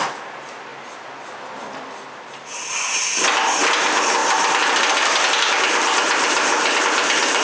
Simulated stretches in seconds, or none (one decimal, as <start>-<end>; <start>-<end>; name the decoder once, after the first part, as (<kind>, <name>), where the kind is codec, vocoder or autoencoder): 4.2-6.8 (vocoder, BigVGAN v2)